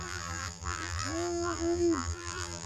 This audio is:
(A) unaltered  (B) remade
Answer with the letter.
B